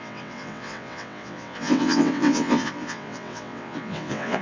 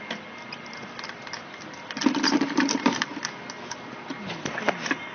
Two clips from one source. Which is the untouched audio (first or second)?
second